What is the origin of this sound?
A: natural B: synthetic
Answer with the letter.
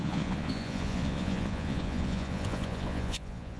B